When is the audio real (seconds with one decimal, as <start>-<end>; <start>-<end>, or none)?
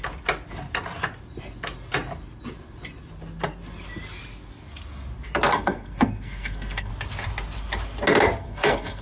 0.0-5.5; 6.9-8.4